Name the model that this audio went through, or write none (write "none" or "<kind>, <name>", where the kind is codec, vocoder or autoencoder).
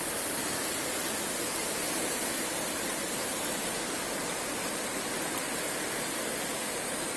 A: none